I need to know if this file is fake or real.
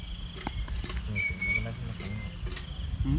real